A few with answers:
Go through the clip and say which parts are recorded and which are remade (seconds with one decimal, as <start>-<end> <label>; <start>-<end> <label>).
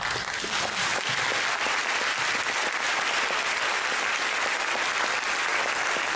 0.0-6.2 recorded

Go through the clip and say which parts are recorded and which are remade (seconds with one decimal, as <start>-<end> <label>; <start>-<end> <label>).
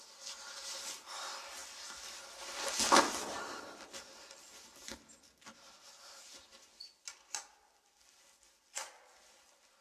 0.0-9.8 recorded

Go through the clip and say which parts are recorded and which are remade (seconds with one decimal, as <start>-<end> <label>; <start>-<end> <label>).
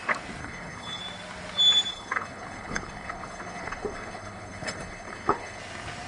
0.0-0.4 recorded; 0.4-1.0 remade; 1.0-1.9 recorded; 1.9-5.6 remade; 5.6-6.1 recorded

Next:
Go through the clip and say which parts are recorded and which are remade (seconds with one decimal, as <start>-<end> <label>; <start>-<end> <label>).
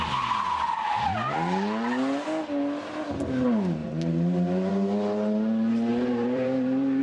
0.0-5.9 recorded; 5.9-7.0 remade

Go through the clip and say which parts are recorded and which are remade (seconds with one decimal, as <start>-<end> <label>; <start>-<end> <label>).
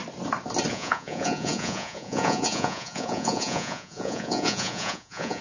0.0-0.7 recorded; 0.7-5.4 remade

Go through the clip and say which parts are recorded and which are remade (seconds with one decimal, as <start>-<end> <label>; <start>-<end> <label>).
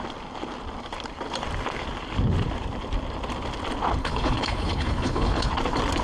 0.0-4.0 recorded; 4.0-5.5 remade; 5.5-6.0 recorded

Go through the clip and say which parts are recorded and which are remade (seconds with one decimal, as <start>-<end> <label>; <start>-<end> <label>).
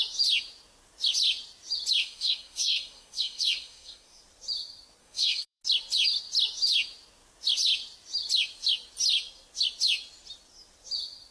0.0-2.0 recorded; 2.0-4.2 remade; 4.2-5.0 recorded; 5.0-5.6 remade; 5.6-11.3 recorded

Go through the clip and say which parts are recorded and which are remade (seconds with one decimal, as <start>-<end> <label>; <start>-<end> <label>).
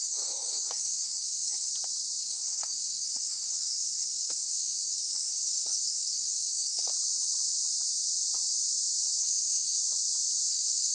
0.0-1.7 remade; 1.7-2.2 recorded; 2.2-6.9 remade; 6.9-9.2 recorded; 9.2-9.8 remade; 9.8-10.5 recorded; 10.5-10.9 remade